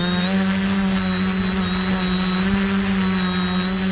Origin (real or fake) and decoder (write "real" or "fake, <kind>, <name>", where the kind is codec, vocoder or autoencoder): real